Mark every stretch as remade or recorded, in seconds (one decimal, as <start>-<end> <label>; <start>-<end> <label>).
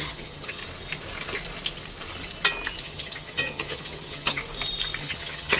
0.0-0.6 remade; 0.6-2.8 recorded; 2.8-4.4 remade; 4.4-5.0 recorded; 5.0-5.6 remade